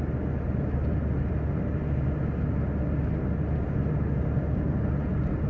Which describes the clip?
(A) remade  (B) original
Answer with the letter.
B